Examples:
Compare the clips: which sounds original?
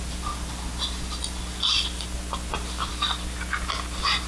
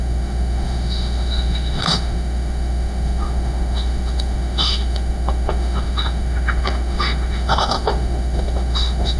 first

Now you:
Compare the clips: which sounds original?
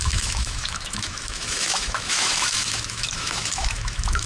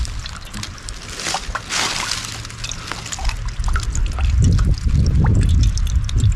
second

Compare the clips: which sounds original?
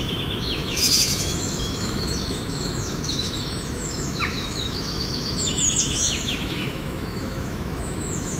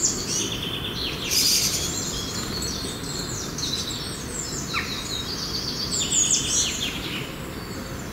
second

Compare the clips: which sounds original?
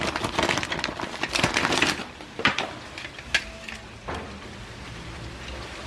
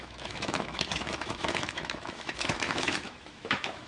first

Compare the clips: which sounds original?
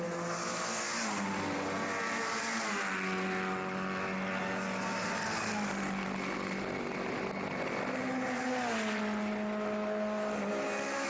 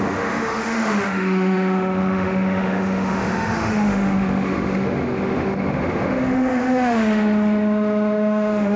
first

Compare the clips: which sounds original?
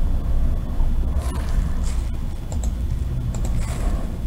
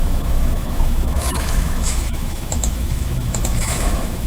first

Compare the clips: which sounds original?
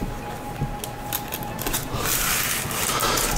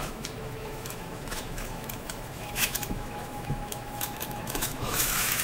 first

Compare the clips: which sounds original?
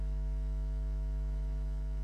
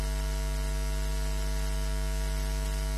second